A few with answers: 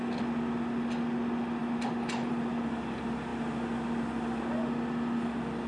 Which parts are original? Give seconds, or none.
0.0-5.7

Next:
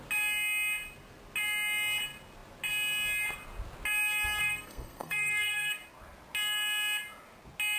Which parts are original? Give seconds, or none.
0.0-4.4; 5.7-7.8

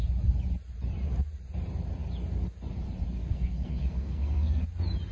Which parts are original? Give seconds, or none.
0.0-3.2; 4.6-5.1

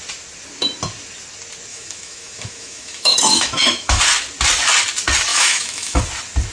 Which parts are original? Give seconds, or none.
0.0-1.7; 4.0-5.3; 6.0-6.5

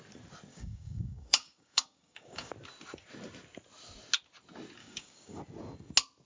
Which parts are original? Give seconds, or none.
0.0-0.5; 2.5-4.8; 5.4-6.3

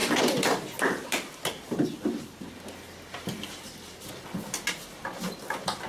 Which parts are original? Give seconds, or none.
0.0-5.9

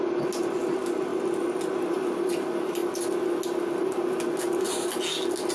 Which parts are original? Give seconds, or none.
0.0-5.5

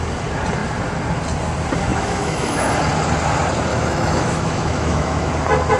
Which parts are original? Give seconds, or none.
0.0-1.9; 2.7-3.7; 5.3-5.8